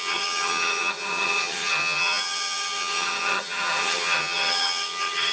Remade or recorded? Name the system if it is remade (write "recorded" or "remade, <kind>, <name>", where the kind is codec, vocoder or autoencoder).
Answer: remade, vocoder, HiFi-GAN